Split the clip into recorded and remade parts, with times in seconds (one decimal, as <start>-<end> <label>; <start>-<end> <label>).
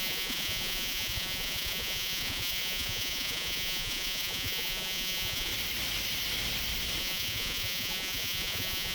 0.0-5.5 remade; 5.5-7.0 recorded; 7.0-8.9 remade